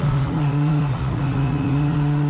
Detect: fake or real fake